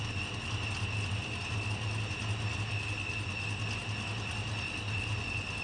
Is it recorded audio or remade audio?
recorded